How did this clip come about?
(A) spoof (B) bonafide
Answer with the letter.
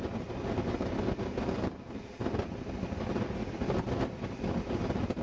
B